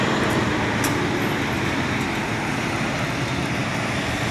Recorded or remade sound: recorded